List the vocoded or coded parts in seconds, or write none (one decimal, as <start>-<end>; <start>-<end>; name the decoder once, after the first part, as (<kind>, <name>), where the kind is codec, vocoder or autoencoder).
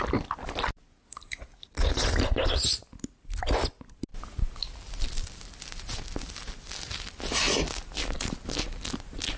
none